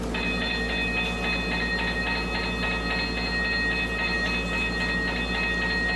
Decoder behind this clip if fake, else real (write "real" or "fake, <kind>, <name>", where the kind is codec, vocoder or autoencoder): real